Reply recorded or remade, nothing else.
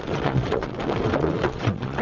remade